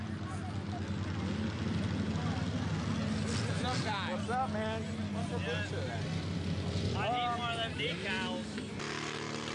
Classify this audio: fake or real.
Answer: real